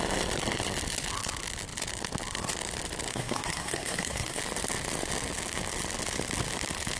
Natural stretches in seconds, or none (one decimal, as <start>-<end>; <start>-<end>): 0.0-3.1; 4.4-7.0